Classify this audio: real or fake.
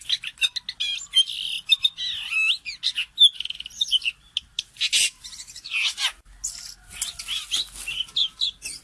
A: real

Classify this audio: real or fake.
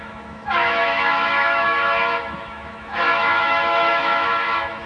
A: fake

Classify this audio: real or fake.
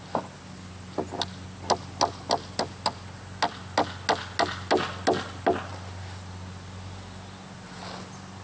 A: real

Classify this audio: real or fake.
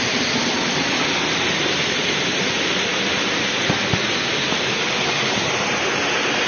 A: real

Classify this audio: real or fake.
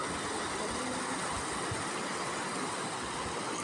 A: real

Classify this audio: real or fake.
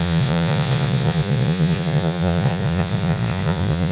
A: fake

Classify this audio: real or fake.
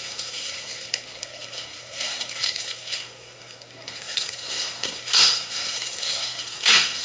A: fake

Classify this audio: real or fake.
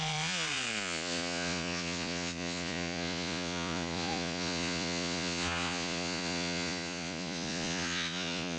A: fake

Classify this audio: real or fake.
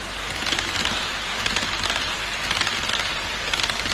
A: real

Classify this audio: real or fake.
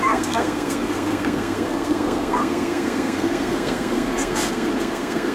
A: fake